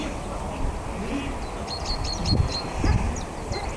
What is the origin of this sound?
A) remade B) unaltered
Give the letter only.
B